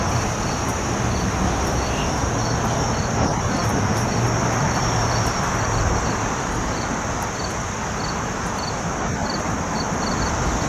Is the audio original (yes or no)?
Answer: yes